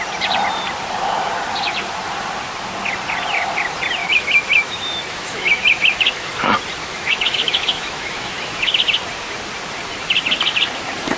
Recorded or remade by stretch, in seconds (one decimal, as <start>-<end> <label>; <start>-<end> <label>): 0.0-4.0 recorded; 4.0-6.3 remade; 6.3-6.8 recorded; 6.8-8.7 remade; 8.7-11.2 recorded